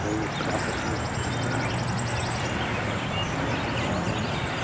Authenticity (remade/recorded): recorded